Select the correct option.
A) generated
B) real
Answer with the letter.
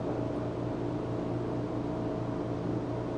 B